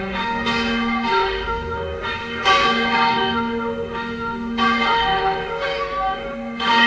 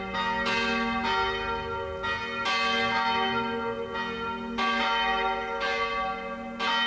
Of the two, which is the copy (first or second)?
first